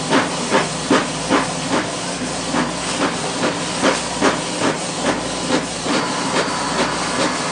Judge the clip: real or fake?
real